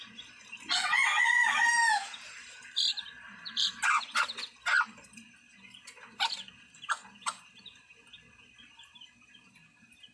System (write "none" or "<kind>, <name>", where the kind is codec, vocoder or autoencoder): none